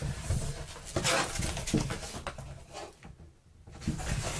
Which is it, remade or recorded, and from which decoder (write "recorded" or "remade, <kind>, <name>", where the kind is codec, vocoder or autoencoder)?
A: recorded